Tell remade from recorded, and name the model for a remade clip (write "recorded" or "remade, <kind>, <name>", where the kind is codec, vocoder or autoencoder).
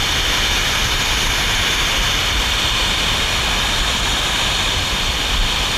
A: recorded